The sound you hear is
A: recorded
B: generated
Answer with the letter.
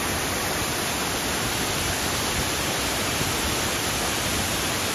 A